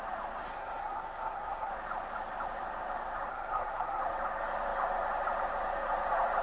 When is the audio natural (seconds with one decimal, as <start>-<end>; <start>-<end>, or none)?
0.0-0.5; 1.7-3.3; 4.0-6.4